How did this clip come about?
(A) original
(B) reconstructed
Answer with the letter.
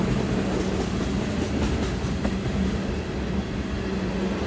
A